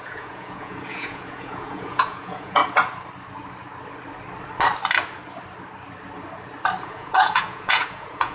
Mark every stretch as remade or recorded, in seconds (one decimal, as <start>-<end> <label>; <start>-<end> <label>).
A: 0.0-2.6 remade; 2.6-6.8 recorded; 6.8-8.3 remade